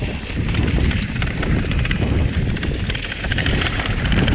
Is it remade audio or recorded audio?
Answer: remade